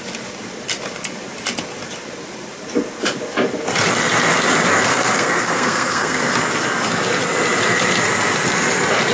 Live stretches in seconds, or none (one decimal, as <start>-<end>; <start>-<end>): 0.0-4.9; 6.2-9.1

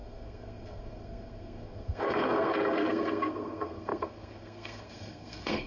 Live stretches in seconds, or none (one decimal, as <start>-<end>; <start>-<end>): none

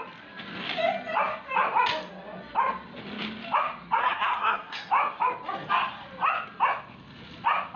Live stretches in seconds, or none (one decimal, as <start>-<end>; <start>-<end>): 0.0-4.0; 4.9-7.8